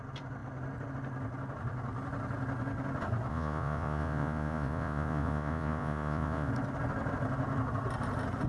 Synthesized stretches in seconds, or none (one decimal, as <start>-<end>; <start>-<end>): 3.3-6.5